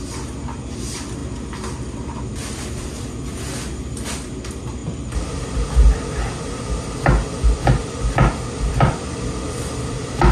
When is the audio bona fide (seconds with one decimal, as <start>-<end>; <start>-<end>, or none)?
4.8-7.6